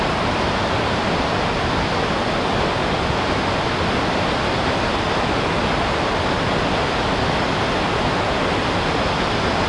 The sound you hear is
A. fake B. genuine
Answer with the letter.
B